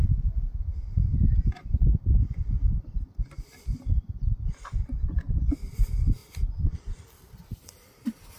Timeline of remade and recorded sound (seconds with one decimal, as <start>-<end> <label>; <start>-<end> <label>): 0.0-6.2 recorded; 6.2-7.5 remade; 7.5-8.4 recorded